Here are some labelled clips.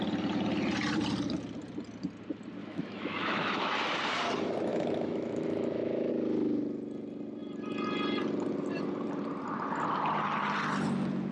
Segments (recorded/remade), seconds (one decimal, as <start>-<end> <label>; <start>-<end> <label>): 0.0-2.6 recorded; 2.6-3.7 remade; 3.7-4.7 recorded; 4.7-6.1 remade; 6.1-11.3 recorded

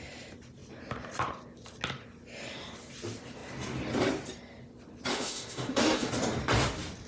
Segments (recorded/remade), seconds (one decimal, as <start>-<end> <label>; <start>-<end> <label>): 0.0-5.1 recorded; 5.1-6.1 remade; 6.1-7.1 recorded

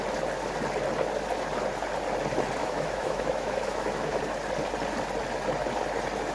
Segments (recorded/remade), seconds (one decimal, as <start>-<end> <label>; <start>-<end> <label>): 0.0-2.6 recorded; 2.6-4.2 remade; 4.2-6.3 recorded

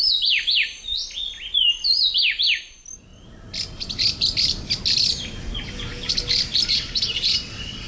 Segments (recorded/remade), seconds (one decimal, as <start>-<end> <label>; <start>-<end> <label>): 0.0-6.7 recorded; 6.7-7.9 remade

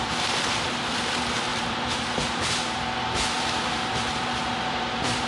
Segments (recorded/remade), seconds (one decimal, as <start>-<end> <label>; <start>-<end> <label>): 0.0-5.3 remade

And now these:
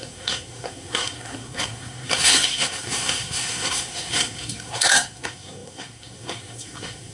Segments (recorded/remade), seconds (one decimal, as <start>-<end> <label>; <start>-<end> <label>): 0.0-7.1 remade

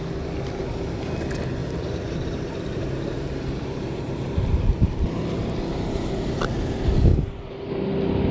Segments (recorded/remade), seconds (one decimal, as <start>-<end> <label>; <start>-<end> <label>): 0.0-1.6 recorded; 1.6-4.5 remade; 4.5-7.1 recorded; 7.1-7.7 remade; 7.7-8.3 recorded